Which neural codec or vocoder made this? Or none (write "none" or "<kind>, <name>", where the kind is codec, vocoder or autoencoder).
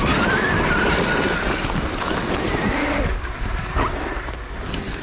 none